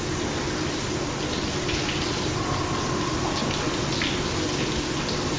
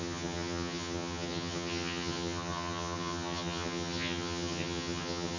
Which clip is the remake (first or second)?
second